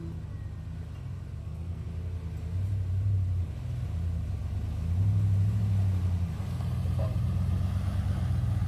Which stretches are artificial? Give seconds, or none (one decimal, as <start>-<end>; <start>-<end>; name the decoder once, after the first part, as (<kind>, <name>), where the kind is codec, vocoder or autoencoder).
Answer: 1.4-1.9 (codec, SNAC)